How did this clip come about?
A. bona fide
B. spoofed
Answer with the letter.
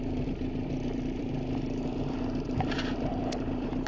B